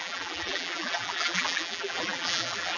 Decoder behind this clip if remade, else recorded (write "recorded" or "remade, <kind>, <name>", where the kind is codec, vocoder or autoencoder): remade, vocoder, BigVGAN v2